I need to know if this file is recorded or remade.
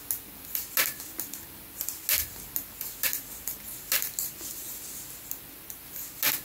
recorded